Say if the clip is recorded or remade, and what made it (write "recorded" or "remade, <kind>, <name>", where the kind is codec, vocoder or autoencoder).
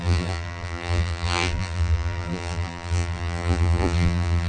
remade, vocoder, BigVGAN v2